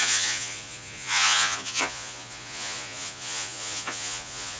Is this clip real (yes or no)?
no